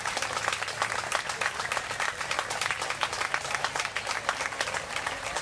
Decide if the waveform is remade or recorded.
recorded